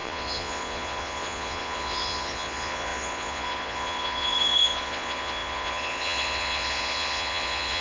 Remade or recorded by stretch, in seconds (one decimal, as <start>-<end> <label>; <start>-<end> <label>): 0.0-7.8 remade